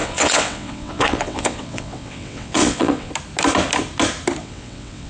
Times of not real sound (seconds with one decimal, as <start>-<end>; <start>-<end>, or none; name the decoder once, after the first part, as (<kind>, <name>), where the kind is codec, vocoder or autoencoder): 0.0-3.1 (vocoder, WaveNeXt); 4.4-5.1